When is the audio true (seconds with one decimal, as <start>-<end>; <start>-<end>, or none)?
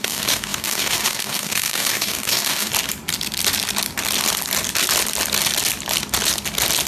2.7-6.9